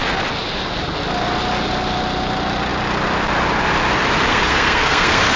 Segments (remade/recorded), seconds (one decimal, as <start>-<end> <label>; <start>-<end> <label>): 0.0-4.3 recorded; 4.3-5.4 remade